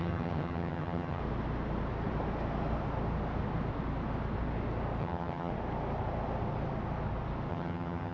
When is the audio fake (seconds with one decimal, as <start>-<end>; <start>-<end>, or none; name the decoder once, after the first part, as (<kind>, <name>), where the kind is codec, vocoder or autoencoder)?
0.0-1.2 (vocoder, HiFi-GAN); 5.0-5.5; 7.5-8.1